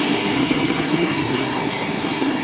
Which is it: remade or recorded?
remade